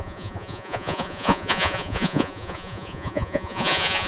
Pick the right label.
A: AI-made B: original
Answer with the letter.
A